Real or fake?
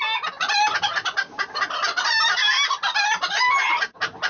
real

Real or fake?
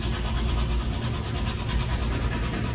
real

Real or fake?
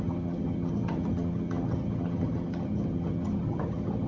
fake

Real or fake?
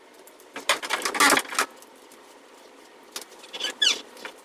real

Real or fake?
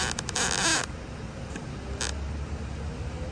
real